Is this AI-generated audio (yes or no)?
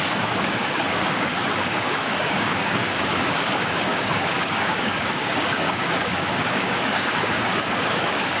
yes